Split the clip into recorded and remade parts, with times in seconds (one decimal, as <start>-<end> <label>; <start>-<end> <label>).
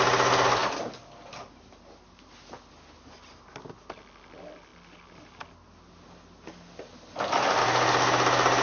0.0-8.6 recorded